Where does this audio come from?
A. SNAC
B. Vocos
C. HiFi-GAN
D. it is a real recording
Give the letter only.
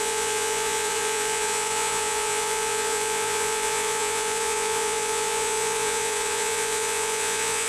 B